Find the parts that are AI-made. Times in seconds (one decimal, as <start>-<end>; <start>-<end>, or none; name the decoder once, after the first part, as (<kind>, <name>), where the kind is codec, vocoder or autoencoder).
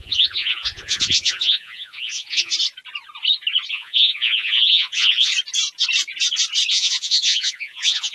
0.0-2.5 (vocoder, Vocos); 3.7-5.3; 6.7-8.1